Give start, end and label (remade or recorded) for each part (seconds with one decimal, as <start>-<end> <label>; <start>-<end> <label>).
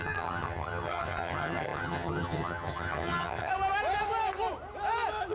0.0-3.5 remade; 3.5-5.3 recorded